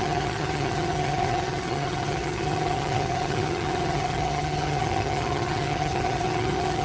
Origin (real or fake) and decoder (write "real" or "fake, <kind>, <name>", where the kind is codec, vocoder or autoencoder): fake, vocoder, HiFi-GAN